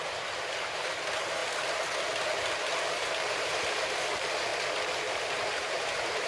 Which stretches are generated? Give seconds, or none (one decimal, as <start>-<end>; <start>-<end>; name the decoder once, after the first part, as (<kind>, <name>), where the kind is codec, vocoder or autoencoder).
0.0-1.4 (vocoder, BigVGAN v2); 2.9-4.5; 5.1-6.3